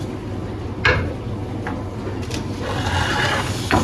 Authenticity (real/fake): real